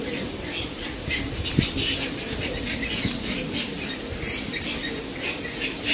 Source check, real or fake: real